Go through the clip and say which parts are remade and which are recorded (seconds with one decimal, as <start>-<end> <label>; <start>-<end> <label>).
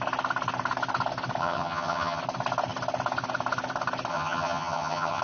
0.0-1.4 recorded; 1.4-2.2 remade; 2.2-4.1 recorded; 4.1-5.2 remade